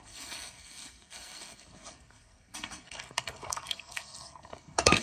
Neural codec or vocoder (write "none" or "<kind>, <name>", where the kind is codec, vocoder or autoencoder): codec, SNAC